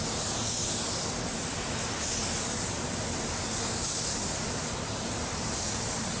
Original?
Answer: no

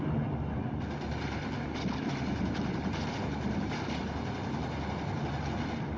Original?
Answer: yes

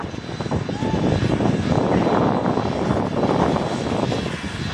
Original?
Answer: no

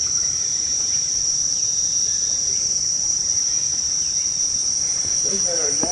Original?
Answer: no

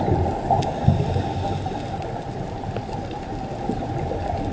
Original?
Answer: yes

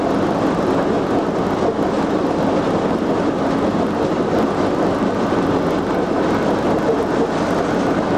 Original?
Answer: yes